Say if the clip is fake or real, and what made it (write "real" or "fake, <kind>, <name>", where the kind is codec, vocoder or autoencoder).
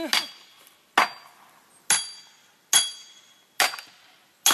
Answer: real